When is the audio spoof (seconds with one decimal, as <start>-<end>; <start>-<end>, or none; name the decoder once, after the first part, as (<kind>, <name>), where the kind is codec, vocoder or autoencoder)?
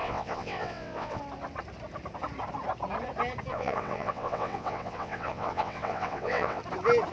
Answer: 0.0-1.2 (vocoder, WaveNeXt); 3.5-6.6